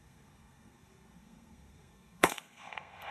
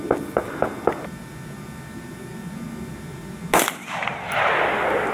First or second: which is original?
second